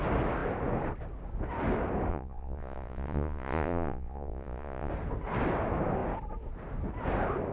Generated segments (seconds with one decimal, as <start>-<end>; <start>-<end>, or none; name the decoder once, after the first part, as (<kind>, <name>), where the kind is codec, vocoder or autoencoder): 2.1-4.9 (vocoder, Vocos)